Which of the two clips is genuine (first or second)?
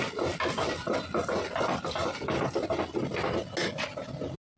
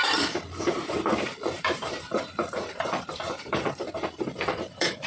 first